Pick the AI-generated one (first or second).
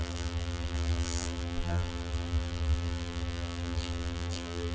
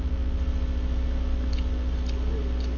first